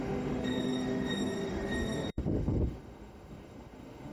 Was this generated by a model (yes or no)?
yes